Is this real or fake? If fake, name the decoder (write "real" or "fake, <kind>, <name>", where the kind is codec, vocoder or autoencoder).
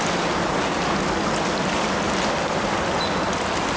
real